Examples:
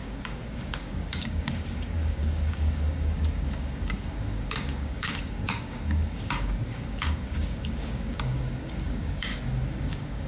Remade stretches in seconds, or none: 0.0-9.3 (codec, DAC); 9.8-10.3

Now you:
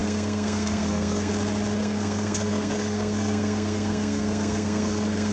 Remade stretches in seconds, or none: 0.0-1.3 (codec, SNAC); 1.8-5.3

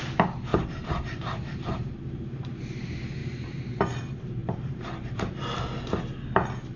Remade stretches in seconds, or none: 0.5-2.6 (vocoder, BigVGAN v2); 3.2-3.7; 4.4-5.2